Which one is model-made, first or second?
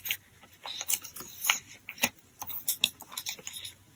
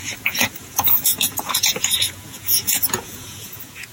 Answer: second